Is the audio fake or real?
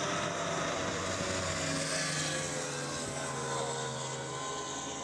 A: real